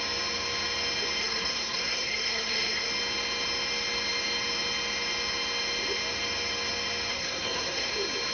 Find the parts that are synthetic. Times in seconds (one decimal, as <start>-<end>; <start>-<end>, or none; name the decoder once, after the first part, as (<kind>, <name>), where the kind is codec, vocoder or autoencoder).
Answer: 1.2-2.9 (codec, SNAC); 7.1-7.9